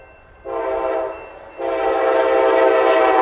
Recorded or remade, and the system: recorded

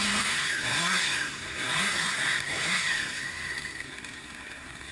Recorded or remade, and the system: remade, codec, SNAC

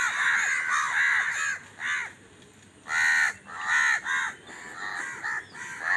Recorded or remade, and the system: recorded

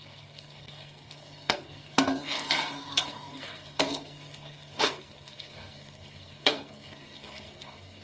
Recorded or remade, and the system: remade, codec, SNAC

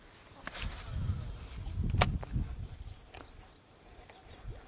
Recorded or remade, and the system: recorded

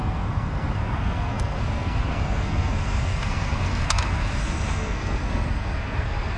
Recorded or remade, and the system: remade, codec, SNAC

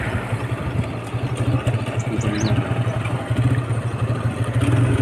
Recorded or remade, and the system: recorded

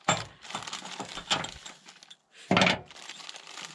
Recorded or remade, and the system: recorded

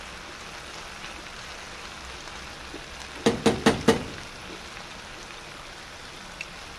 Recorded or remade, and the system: recorded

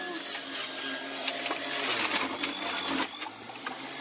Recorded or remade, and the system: recorded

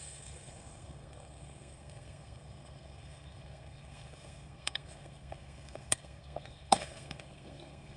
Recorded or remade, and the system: remade, codec, SNAC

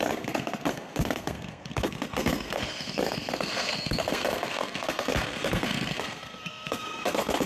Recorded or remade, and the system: remade, codec, SNAC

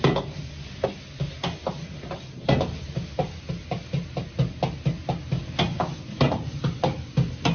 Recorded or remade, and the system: recorded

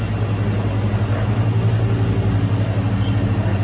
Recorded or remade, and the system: recorded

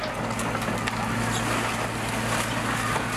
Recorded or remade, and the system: recorded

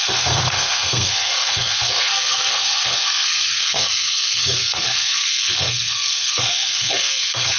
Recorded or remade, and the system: remade, codec, SNAC